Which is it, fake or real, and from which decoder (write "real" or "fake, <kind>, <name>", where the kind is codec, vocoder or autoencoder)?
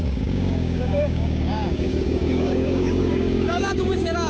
fake, codec, DAC